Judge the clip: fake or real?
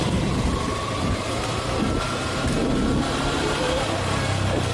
real